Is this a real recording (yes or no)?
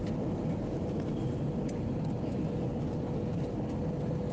yes